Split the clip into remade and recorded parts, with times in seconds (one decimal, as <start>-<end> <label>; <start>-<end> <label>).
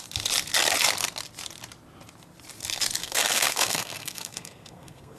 0.0-3.0 recorded; 3.0-5.2 remade